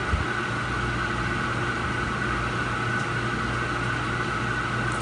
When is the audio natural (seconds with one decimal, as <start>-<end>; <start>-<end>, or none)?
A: 0.0-5.0